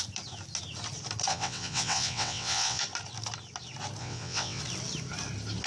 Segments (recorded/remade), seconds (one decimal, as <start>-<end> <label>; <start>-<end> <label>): 0.0-1.3 recorded; 1.3-2.8 remade; 2.8-4.0 recorded; 4.0-4.6 remade; 4.6-5.7 recorded

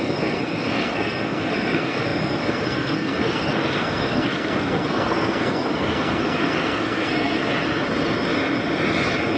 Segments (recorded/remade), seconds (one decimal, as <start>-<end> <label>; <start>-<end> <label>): 0.0-7.4 remade; 7.4-9.4 recorded

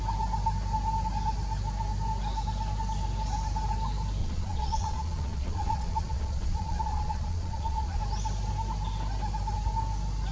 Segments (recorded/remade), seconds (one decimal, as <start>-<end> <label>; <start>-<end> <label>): 0.0-4.2 recorded; 4.2-8.0 remade; 8.0-10.3 recorded

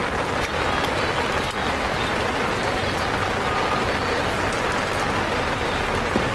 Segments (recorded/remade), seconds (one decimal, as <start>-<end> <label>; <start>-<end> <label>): 0.0-6.3 recorded

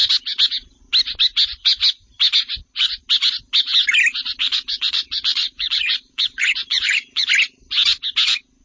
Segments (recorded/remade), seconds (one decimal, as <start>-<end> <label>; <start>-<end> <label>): 0.0-4.4 recorded; 4.4-7.3 remade; 7.3-8.6 recorded